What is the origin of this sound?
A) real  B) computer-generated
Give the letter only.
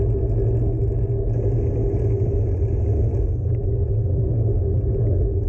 A